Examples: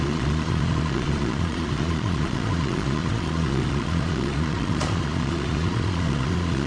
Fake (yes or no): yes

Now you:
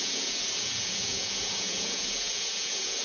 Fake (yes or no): yes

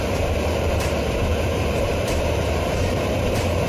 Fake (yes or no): yes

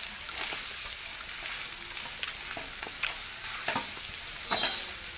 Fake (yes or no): no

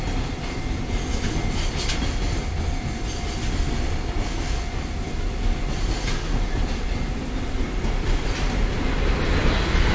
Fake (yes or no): no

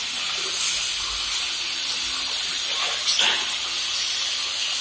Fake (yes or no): no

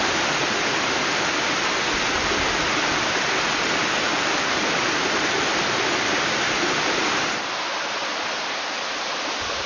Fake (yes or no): no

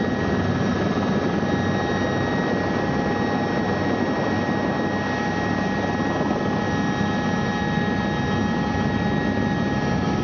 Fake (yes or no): no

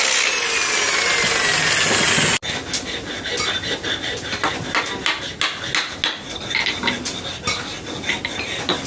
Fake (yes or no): no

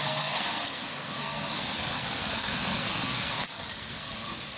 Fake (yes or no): yes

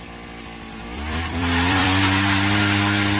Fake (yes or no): yes